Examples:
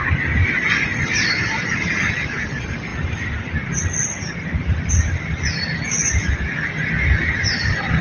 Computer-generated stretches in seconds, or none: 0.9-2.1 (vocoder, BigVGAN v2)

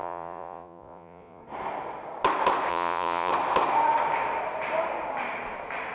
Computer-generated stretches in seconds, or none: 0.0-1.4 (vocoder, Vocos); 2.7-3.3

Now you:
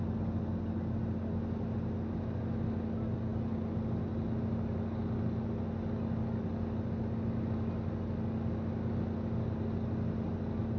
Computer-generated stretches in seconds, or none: none

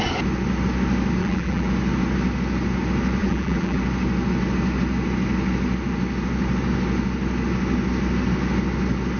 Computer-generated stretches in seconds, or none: 1.2-1.7 (vocoder, BigVGAN v2); 3.2-3.8

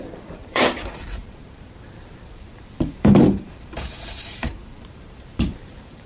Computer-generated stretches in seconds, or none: 0.0-6.1 (vocoder, BigVGAN v2)

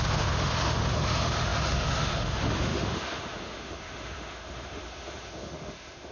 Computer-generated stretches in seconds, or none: 0.0-6.1 (autoencoder, DAC-VAE)

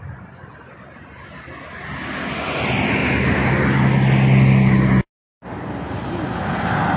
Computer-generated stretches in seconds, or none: 3.0-3.5 (vocoder, BigVGAN v2)